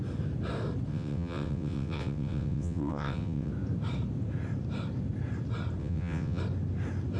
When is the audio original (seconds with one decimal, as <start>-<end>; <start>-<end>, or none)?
0.0-0.9; 3.5-5.8; 6.4-7.2